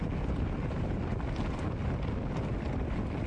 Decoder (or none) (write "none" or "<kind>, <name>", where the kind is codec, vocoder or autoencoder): none